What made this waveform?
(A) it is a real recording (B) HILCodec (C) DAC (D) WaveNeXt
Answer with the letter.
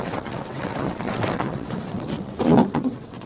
D